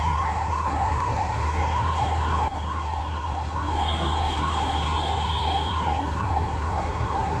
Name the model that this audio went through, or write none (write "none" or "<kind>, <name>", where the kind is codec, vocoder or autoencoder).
codec, SNAC